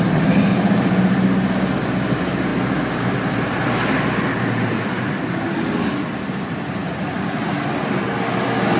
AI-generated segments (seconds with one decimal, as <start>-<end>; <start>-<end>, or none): none